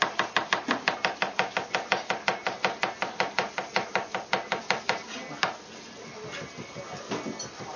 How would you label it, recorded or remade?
recorded